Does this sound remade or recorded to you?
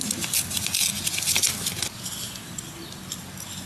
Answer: recorded